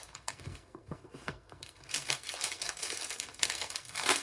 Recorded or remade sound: remade